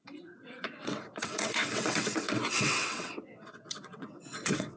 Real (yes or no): no